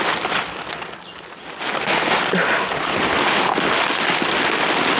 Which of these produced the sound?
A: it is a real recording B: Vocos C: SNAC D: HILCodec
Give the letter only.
A